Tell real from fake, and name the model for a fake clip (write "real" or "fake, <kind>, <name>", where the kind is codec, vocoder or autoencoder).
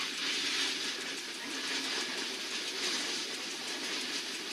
fake, vocoder, BigVGAN v2